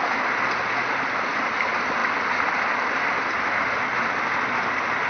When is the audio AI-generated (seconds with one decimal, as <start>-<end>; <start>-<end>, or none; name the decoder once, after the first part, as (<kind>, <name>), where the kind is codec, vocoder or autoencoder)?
none